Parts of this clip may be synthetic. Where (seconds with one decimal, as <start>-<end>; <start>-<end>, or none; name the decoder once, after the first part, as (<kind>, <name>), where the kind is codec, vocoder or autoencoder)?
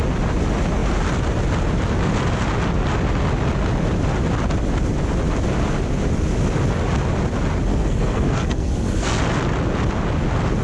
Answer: 7.7-9.2 (codec, SNAC)